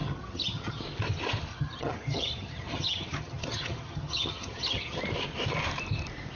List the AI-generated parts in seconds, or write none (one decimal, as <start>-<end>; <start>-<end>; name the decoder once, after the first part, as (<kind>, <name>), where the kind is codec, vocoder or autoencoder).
0.0-0.8 (vocoder, HiFi-GAN); 1.5-5.0